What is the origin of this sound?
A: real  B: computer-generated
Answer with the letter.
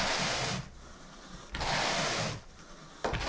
A